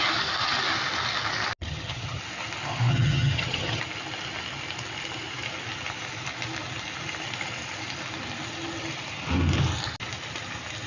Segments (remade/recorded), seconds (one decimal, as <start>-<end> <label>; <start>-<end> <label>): 0.0-1.6 recorded; 1.6-2.2 remade; 2.2-2.9 recorded; 2.9-3.8 remade; 3.8-10.9 recorded